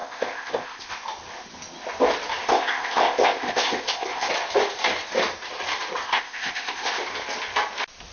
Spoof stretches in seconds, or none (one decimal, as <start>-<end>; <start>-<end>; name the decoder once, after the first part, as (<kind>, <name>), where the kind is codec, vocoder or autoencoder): 0.0-0.9 (codec, ZipCodec); 2.4-4.3; 6.0-7.0